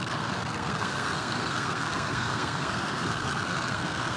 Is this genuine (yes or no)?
no